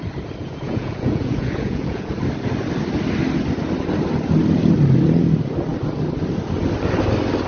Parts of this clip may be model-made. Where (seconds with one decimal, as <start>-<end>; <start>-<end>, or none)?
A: 0.4-2.1